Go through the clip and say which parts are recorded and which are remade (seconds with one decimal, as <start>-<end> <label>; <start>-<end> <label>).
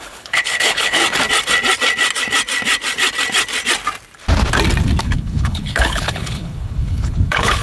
0.0-1.0 remade; 1.0-5.0 recorded; 5.0-7.6 remade